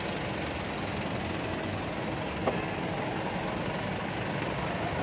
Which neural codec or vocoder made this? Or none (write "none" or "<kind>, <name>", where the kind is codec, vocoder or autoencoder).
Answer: none